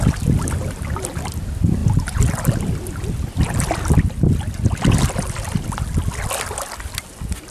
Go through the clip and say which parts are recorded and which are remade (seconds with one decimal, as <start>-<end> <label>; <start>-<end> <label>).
0.0-7.5 recorded